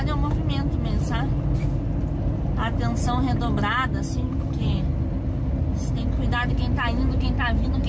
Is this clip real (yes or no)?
yes